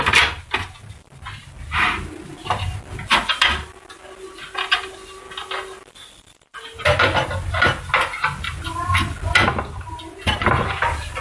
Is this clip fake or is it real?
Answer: real